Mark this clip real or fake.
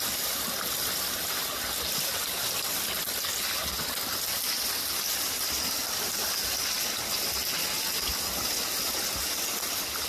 real